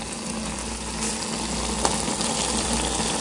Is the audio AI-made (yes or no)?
no